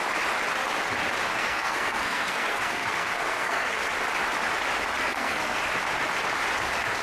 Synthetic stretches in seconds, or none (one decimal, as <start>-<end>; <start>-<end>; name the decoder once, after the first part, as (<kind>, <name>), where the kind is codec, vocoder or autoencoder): 1.3-3.9 (codec, SNAC); 5.0-5.6